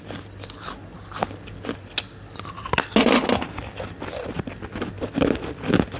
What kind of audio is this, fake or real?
real